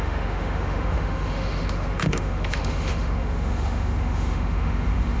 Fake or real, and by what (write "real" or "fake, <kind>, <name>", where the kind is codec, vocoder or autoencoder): fake, autoencoder, DAC-VAE